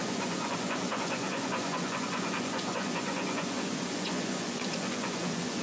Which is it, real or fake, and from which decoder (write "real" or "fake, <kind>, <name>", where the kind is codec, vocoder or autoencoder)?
fake, vocoder, Vocos